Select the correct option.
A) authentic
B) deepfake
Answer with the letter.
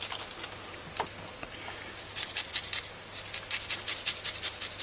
A